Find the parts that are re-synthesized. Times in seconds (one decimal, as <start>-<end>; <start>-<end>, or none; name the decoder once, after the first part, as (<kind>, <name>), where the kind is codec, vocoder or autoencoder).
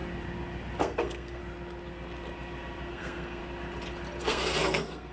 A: 0.8-1.4 (codec, SNAC); 2.9-3.4; 4.2-5.1